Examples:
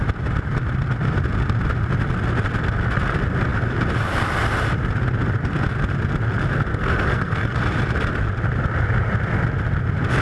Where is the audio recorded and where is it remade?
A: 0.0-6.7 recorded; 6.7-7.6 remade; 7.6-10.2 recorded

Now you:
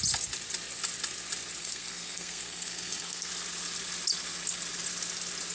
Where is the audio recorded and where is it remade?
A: 0.0-1.6 recorded; 1.6-3.3 remade; 3.3-5.5 recorded

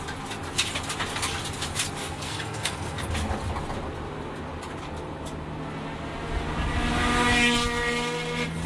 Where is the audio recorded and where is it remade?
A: 0.0-2.0 recorded; 2.0-3.1 remade; 3.1-8.7 recorded

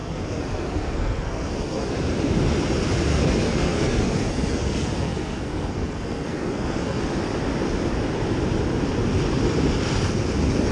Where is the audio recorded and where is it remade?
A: 0.0-1.9 remade; 1.9-3.1 recorded; 3.1-7.0 remade; 7.0-10.7 recorded